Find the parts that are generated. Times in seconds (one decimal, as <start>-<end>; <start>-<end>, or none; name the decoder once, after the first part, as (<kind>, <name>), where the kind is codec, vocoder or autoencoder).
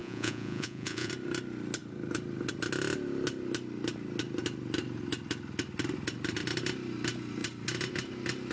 0.0-1.1 (vocoder, Vocos)